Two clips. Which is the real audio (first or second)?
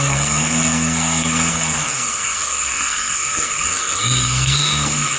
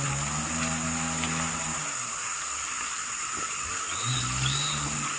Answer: second